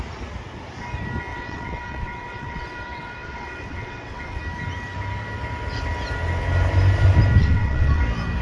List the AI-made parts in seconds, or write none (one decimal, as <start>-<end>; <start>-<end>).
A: 1.3-4.4; 7.4-8.0